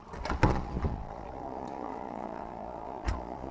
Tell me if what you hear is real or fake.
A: fake